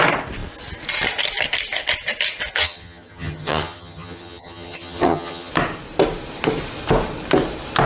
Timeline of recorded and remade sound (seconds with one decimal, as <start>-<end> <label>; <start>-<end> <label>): 0.0-2.6 recorded; 2.6-5.5 remade; 5.5-7.9 recorded